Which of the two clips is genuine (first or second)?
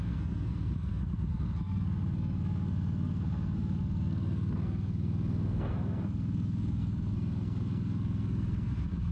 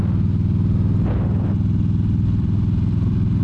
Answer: second